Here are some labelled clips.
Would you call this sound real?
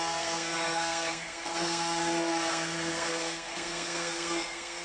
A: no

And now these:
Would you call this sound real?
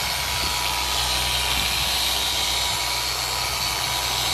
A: yes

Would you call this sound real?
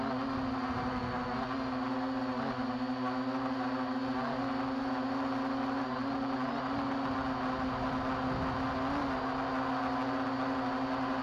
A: yes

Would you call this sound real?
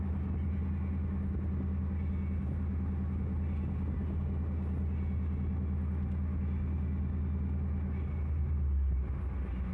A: yes